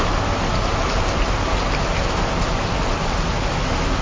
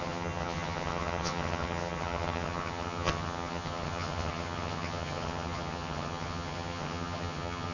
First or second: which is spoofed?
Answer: second